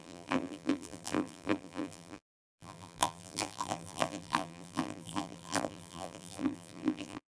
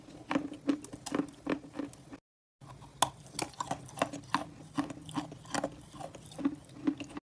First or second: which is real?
second